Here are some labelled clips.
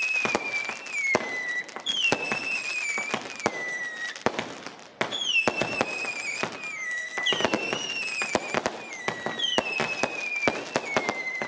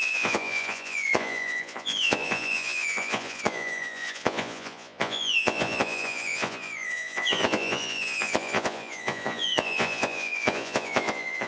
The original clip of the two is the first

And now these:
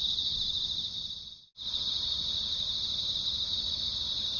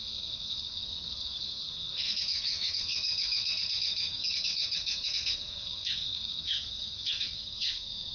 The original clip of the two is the first